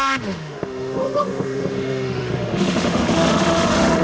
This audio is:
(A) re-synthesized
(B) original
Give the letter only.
A